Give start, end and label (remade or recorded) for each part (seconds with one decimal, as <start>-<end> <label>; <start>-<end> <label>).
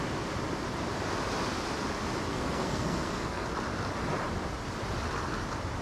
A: 0.0-2.3 recorded; 2.3-3.5 remade; 3.5-5.8 recorded